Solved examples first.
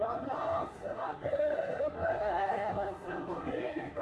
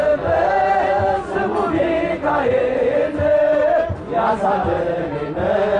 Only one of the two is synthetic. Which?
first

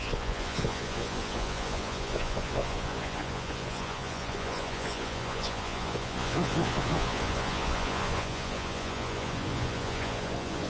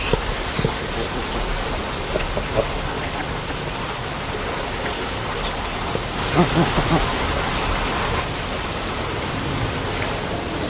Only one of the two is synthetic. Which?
first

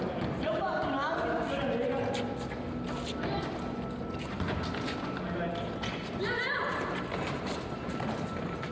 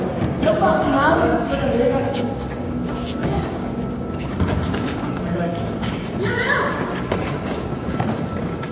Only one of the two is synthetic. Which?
second